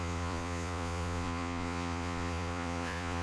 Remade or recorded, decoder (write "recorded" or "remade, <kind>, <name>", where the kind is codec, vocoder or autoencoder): remade, vocoder, Vocos